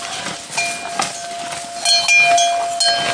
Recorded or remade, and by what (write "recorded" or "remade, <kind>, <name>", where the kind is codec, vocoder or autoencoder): recorded